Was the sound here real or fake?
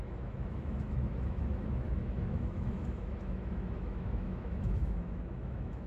fake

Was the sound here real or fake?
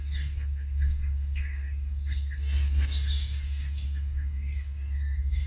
fake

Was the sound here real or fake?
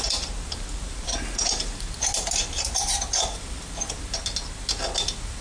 real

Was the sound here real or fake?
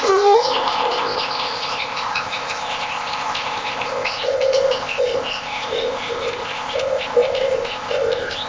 fake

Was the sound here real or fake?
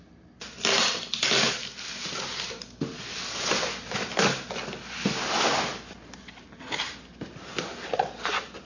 real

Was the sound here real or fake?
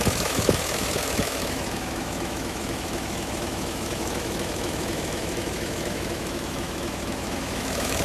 fake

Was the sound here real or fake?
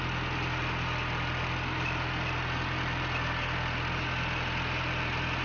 real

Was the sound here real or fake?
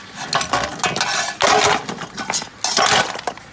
real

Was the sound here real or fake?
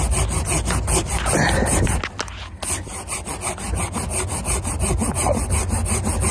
real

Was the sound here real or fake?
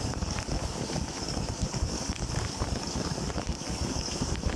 fake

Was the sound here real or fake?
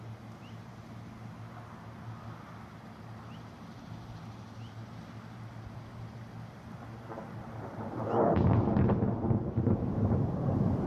fake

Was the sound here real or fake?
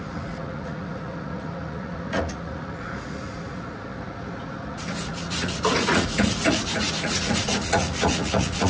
fake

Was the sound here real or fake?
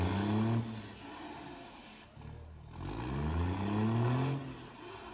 real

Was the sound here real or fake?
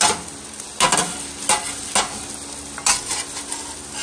real